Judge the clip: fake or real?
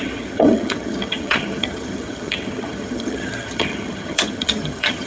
fake